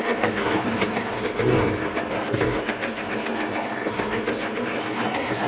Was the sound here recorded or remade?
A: remade